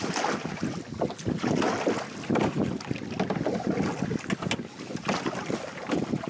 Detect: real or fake real